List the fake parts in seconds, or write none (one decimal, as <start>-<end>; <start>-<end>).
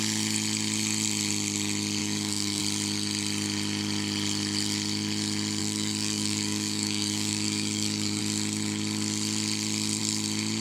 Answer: 2.0-2.6; 5.6-8.2